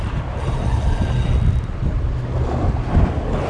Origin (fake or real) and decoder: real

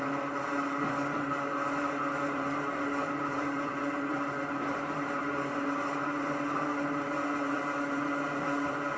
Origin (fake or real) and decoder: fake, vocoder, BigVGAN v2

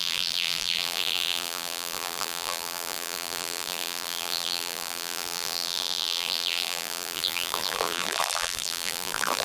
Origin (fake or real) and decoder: fake, vocoder, BigVGAN v2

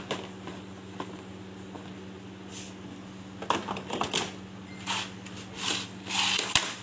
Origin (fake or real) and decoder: real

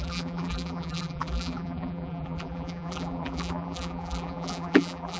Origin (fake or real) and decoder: fake, vocoder, BigVGAN v2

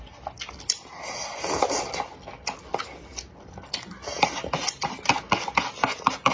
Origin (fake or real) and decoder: real